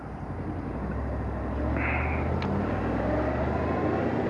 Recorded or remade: recorded